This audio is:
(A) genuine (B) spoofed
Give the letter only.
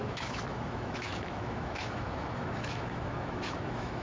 B